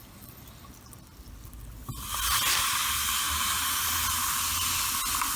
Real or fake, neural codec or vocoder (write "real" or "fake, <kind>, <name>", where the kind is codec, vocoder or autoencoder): real